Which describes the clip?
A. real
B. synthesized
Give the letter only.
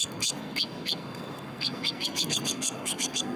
B